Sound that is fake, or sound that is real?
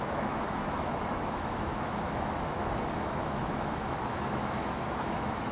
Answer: fake